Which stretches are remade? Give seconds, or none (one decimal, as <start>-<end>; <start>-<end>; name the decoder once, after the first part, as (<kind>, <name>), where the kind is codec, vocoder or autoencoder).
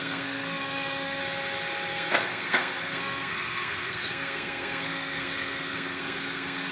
0.0-1.2 (codec, SNAC); 1.9-6.7